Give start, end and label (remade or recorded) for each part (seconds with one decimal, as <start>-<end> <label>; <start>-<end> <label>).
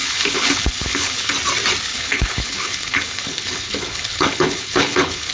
0.0-1.3 remade; 1.3-1.9 recorded; 1.9-5.3 remade